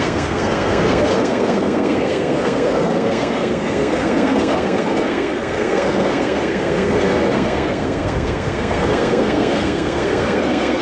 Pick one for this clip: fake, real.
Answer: fake